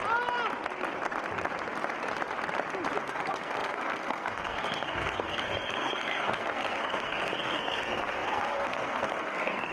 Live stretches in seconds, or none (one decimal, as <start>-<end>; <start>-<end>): 0.0-3.0